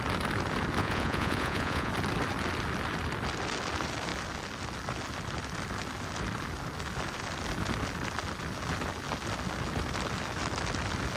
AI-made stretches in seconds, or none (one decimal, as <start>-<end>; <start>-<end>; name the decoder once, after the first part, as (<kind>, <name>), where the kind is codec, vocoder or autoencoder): 0.8-1.9 (vocoder, Vocos)